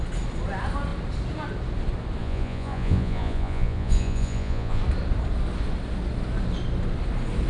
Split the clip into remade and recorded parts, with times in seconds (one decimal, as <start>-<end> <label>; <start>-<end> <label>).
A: 0.0-2.2 recorded; 2.2-4.8 remade; 4.8-7.5 recorded